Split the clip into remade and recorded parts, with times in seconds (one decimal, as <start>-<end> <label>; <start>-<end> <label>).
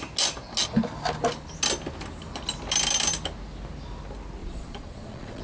0.0-4.4 recorded; 4.4-5.4 remade